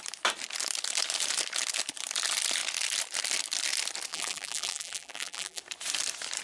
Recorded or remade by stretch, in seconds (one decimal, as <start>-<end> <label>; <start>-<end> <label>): 0.0-4.1 recorded; 4.1-5.6 remade; 5.6-6.4 recorded